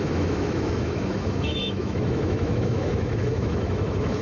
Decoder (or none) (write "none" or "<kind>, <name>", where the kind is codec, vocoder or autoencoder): autoencoder, DAC-VAE